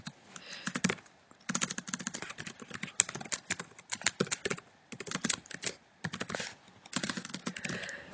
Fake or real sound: real